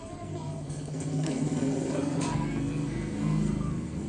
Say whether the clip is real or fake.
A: fake